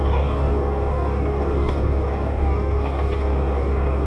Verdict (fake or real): fake